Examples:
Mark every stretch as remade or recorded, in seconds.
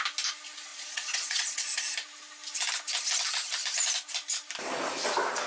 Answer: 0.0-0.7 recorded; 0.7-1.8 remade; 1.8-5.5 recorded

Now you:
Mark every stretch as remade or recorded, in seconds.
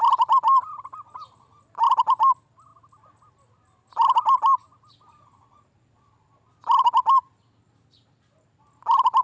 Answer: 0.0-9.2 recorded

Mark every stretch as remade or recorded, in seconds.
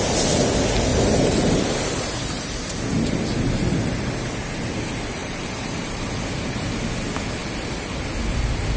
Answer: 0.0-0.9 recorded; 0.9-2.1 remade; 2.1-5.2 recorded; 5.2-6.0 remade; 6.0-7.4 recorded; 7.4-7.9 remade; 7.9-8.8 recorded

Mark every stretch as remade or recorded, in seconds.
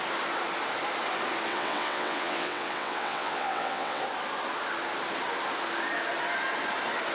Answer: 0.0-1.5 recorded; 1.5-4.0 remade; 4.0-7.1 recorded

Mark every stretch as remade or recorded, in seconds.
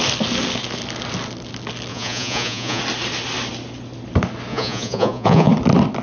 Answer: 0.0-1.9 recorded; 1.9-2.8 remade; 2.8-4.5 recorded; 4.5-5.5 remade; 5.5-6.0 recorded